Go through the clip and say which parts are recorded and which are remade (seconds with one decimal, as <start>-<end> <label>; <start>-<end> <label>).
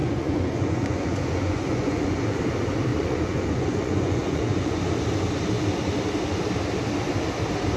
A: 0.0-2.4 remade; 2.4-2.9 recorded; 2.9-4.8 remade; 4.8-7.8 recorded